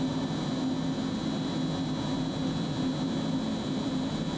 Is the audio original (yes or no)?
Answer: yes